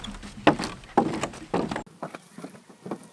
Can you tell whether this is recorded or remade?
recorded